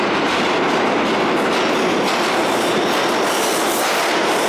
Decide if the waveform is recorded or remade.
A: recorded